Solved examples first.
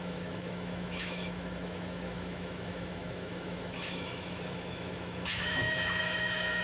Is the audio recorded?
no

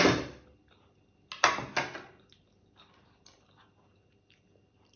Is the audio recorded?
yes